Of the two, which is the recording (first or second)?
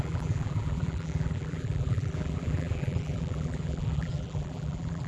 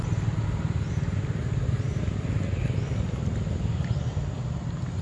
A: second